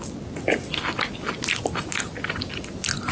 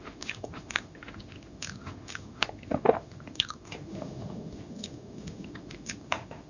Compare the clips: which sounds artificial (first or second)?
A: second